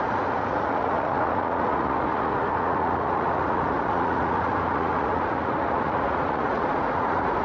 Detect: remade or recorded remade